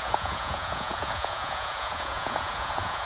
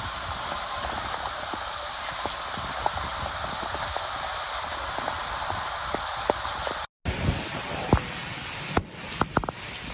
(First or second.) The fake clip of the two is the first